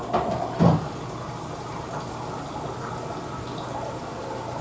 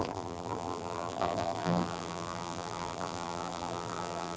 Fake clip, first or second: second